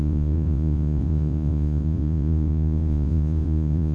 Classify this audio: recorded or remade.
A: remade